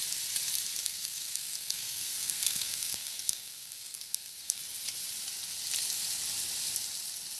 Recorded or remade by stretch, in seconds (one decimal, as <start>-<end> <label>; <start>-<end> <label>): 0.0-0.8 recorded; 0.8-4.6 remade; 4.6-7.4 recorded